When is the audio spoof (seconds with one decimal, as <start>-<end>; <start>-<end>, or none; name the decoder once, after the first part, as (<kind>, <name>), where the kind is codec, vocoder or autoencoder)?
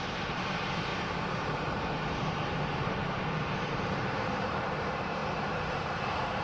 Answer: 0.0-6.4 (vocoder, BigVGAN v2)